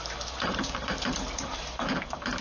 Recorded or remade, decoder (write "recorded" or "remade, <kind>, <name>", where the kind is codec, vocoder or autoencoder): remade, vocoder, BigVGAN v2